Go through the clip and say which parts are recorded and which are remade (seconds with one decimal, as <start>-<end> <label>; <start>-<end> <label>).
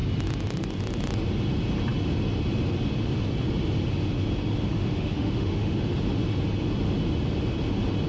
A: 0.0-4.7 recorded; 4.7-5.9 remade; 5.9-8.1 recorded